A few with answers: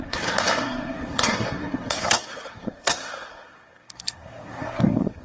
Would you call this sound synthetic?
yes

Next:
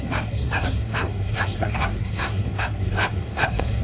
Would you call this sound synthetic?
yes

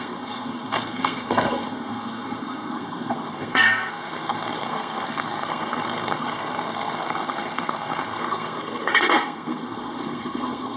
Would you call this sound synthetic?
yes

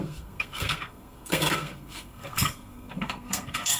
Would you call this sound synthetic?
yes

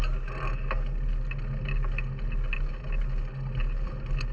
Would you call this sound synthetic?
no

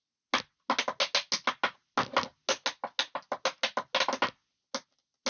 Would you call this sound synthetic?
no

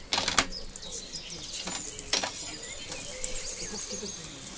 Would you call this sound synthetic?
no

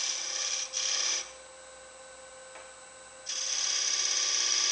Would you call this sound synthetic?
no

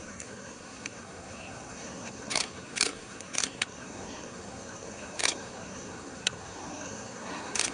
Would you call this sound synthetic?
yes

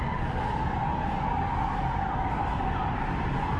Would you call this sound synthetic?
no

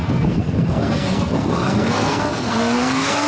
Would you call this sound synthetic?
yes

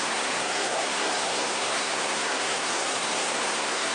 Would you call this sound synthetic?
yes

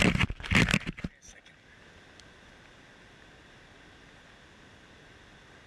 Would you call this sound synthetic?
no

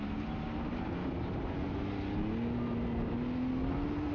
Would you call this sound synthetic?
no